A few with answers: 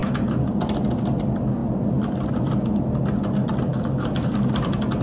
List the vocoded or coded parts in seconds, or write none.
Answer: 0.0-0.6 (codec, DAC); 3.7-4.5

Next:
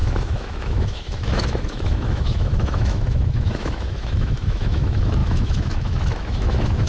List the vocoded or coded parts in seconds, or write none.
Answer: 0.0-6.9 (autoencoder, DAC-VAE)

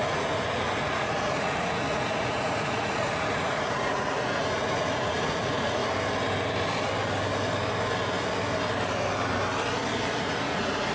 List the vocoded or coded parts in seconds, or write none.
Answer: 0.0-5.8 (vocoder, Vocos); 10.2-10.9

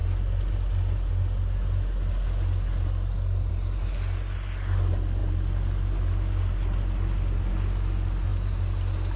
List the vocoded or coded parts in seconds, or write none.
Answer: none

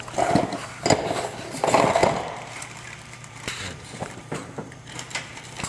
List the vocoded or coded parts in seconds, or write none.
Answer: 2.0-5.7 (vocoder, BigVGAN v2)

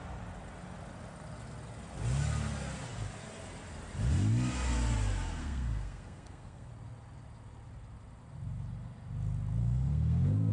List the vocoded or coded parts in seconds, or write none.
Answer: 5.4-6.7 (codec, SNAC); 9.6-10.5

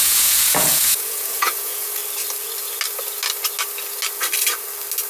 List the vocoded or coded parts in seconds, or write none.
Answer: 0.0-2.0 (vocoder, Vocos)